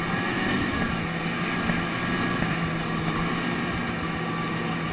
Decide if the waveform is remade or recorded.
recorded